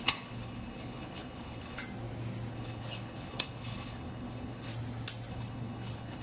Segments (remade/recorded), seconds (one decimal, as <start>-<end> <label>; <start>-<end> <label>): 0.0-1.8 remade; 1.8-2.5 recorded; 2.5-4.7 remade; 4.7-5.3 recorded; 5.3-6.2 remade